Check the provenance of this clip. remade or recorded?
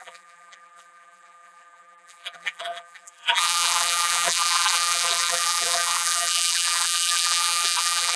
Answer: remade